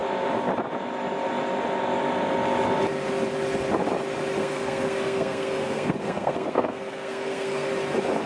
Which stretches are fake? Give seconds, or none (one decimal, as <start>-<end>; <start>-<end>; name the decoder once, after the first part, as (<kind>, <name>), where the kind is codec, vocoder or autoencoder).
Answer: 4.4-7.7 (codec, SNAC)